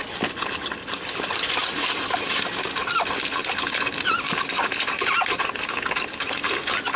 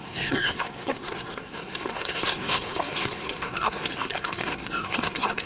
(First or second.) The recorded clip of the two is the first